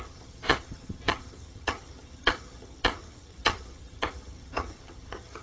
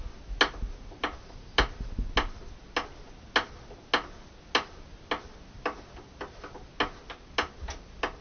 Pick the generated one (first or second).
first